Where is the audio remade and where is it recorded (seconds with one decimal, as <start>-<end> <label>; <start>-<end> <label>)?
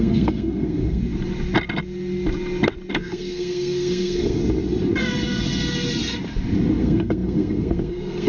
0.0-1.0 remade; 1.0-2.9 recorded; 2.9-4.4 remade; 4.4-6.8 recorded; 6.8-8.3 remade